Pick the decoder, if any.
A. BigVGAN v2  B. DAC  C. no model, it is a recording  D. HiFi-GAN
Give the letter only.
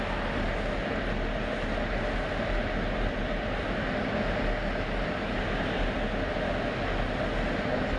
C